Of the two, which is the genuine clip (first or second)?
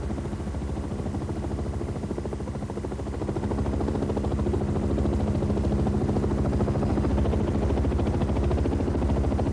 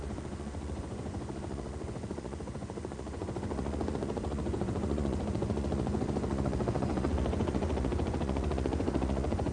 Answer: first